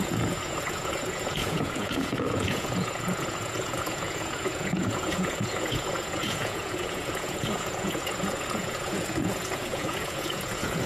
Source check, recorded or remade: remade